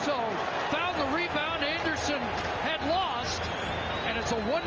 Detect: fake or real real